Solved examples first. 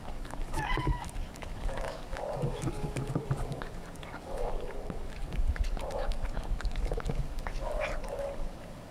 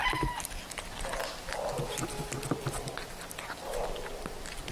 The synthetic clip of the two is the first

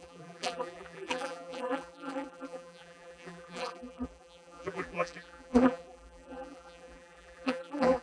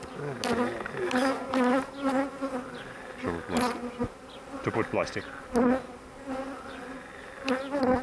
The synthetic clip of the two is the first